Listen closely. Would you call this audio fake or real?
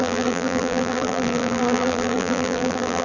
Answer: fake